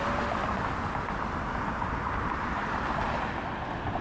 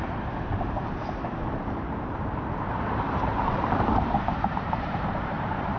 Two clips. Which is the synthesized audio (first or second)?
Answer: second